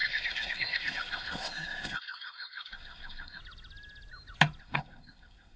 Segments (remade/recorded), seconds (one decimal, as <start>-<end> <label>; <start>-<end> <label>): 0.0-3.4 remade; 3.4-4.6 recorded; 4.6-5.6 remade